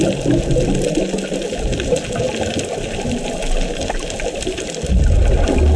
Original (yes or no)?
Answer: yes